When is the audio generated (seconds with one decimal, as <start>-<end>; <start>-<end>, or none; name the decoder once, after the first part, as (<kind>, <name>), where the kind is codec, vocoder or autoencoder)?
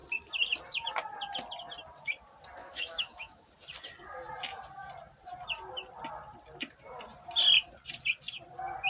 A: 2.6-3.5 (autoencoder, DAC-VAE)